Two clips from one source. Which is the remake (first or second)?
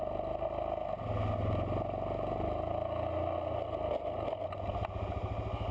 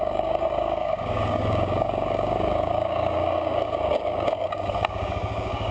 second